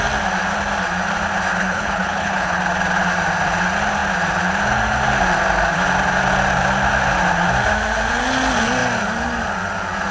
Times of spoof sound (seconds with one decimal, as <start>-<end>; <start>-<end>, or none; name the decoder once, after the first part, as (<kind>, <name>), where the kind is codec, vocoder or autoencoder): 1.6-2.6 (codec, HILCodec)